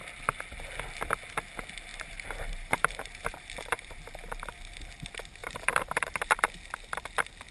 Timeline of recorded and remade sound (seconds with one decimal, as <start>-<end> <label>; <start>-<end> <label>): 0.0-1.9 recorded; 1.9-4.0 remade; 4.0-5.4 recorded; 5.4-6.3 remade; 6.3-7.5 recorded

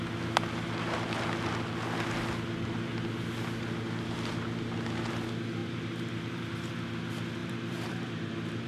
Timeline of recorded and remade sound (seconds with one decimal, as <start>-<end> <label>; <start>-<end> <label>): 0.0-5.6 recorded; 5.6-6.7 remade; 6.7-7.4 recorded; 7.4-8.7 remade

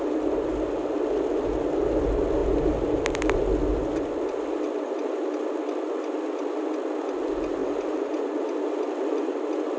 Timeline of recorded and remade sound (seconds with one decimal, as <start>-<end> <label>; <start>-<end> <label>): 0.0-7.6 recorded; 7.6-8.1 remade; 8.1-9.8 recorded

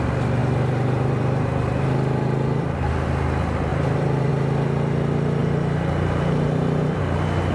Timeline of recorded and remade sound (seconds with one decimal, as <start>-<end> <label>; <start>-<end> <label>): 0.0-0.4 recorded; 0.4-2.9 remade; 2.9-3.7 recorded; 3.7-4.3 remade; 4.3-5.4 recorded; 5.4-7.0 remade; 7.0-7.5 recorded

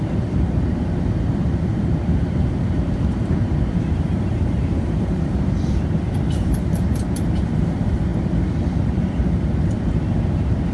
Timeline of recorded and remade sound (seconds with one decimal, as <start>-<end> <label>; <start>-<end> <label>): 0.0-8.1 remade; 8.1-8.8 recorded; 8.8-10.7 remade

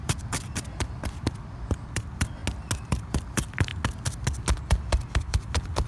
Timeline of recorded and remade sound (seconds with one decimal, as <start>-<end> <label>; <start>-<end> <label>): 0.0-2.4 remade; 2.4-2.9 recorded; 2.9-3.7 remade; 3.7-5.2 recorded; 5.2-5.9 remade

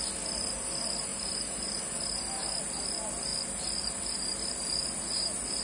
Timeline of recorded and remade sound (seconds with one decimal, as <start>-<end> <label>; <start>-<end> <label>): 0.0-1.1 recorded; 1.1-1.8 remade; 1.8-5.6 recorded

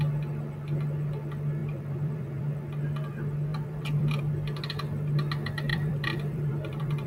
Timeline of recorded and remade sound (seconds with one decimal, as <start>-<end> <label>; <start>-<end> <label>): 0.0-1.6 recorded; 1.6-2.5 remade; 2.5-3.5 recorded; 3.5-4.2 remade; 4.2-5.7 recorded; 5.7-7.1 remade